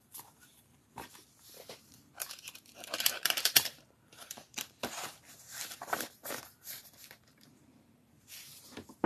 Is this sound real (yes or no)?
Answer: no